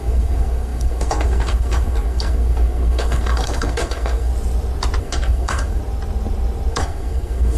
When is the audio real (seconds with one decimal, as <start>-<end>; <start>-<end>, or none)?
4.3-5.0; 5.8-6.7